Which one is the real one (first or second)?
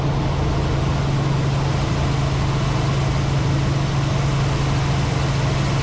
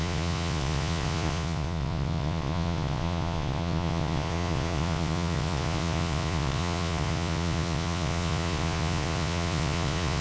first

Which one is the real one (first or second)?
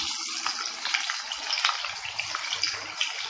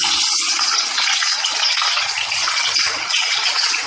first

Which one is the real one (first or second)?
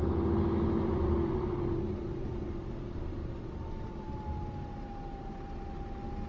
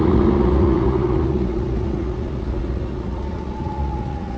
first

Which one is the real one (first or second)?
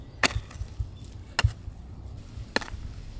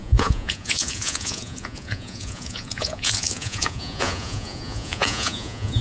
first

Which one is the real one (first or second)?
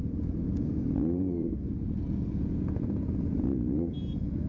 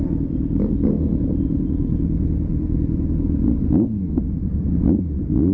second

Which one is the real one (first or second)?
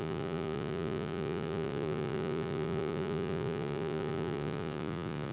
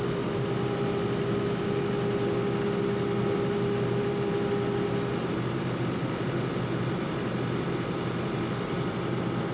second